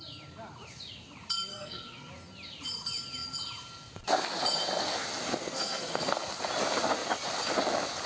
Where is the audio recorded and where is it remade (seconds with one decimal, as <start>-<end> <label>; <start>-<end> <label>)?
0.0-1.5 recorded; 1.5-2.1 remade; 2.1-5.4 recorded; 5.4-6.2 remade; 6.2-8.1 recorded